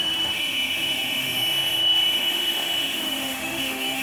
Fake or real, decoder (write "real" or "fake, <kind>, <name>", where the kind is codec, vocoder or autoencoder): fake, autoencoder, DAC-VAE